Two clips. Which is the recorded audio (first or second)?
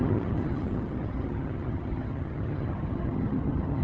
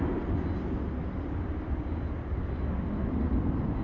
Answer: second